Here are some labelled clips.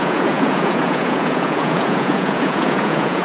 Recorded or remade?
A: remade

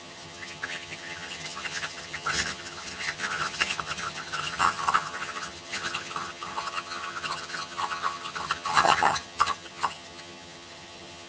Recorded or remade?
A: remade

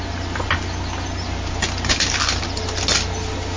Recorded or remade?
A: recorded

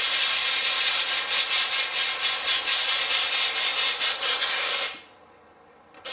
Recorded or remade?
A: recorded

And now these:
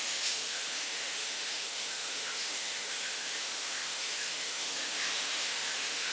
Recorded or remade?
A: remade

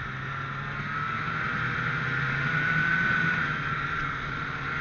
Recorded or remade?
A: recorded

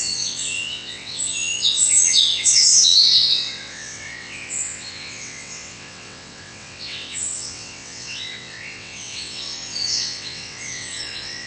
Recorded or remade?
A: remade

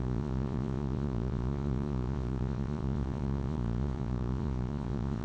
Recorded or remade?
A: remade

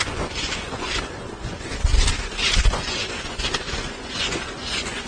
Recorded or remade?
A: remade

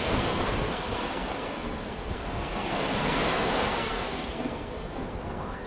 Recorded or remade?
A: remade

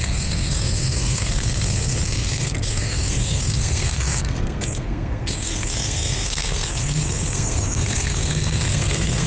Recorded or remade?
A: remade